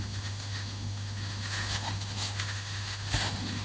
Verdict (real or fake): fake